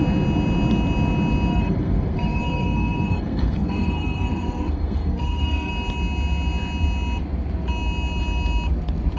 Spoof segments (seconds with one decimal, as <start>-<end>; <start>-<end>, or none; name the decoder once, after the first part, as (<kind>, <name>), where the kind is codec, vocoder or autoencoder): 1.5-5.7 (codec, SNAC)